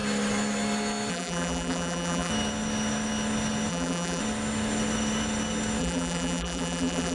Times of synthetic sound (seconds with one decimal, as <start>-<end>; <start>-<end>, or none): 1.1-2.3; 3.7-4.2; 5.8-7.1